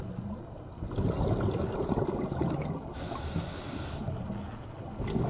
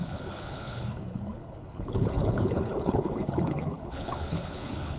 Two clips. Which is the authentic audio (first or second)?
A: first